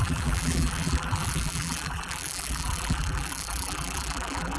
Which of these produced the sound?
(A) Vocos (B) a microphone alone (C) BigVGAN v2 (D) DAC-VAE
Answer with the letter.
C